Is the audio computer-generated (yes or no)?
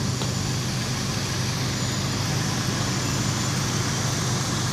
no